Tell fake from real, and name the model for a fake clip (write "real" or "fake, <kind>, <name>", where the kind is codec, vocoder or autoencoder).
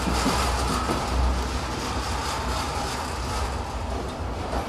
real